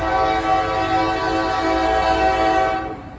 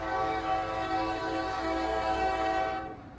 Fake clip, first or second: second